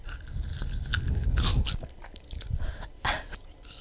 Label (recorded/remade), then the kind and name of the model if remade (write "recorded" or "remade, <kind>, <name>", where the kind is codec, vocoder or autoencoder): recorded